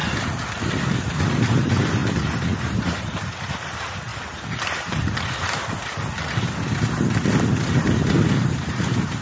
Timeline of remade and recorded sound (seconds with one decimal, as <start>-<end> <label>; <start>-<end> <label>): 0.0-0.9 recorded; 0.9-2.0 remade; 2.0-2.6 recorded; 2.6-4.1 remade; 4.1-8.4 recorded; 8.4-9.2 remade